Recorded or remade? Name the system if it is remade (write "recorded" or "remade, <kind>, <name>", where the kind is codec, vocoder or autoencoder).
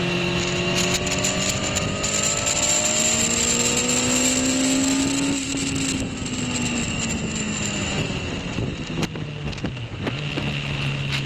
recorded